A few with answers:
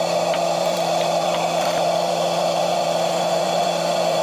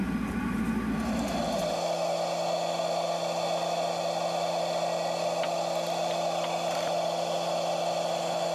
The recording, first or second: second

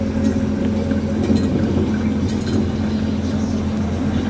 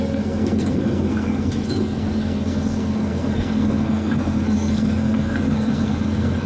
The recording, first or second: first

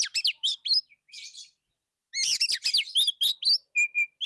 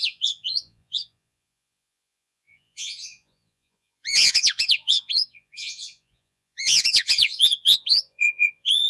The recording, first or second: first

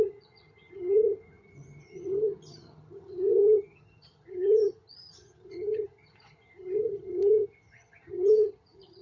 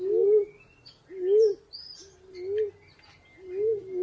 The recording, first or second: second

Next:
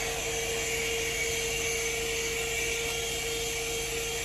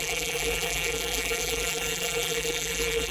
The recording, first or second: first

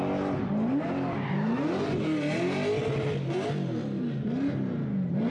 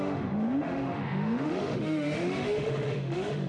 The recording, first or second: first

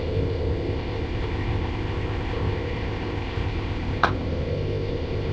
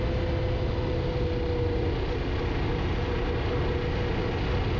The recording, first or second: second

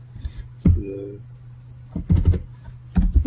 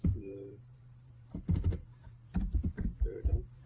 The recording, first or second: first